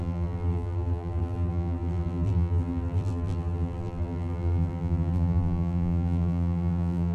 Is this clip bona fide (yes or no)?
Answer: no